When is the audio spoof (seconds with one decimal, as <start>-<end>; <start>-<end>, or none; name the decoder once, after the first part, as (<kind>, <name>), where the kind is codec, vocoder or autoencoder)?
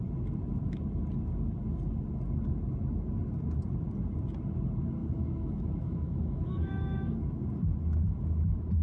5.0-7.4 (autoencoder, DAC-VAE)